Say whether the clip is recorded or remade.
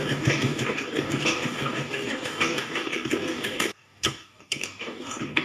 remade